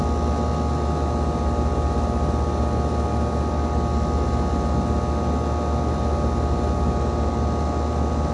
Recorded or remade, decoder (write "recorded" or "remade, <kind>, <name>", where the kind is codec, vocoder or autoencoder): recorded